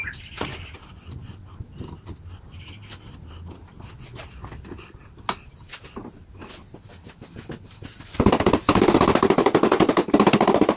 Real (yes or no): yes